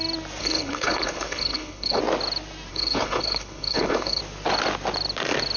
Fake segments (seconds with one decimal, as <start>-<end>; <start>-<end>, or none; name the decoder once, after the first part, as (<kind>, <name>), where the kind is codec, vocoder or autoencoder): 0.4-2.0 (codec, HILCodec); 2.7-4.2